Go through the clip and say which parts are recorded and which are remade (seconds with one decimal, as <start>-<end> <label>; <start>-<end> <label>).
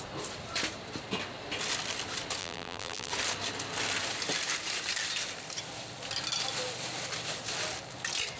0.0-2.4 recorded; 2.4-3.1 remade; 3.1-8.4 recorded